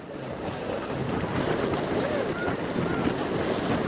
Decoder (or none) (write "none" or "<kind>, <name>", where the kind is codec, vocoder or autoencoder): none